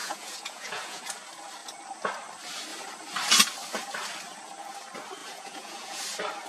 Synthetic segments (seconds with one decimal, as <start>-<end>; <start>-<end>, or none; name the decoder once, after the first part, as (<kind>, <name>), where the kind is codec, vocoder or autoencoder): 0.0-1.0 (vocoder, Vocos); 5.2-6.0